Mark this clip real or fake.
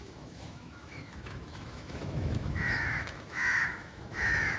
fake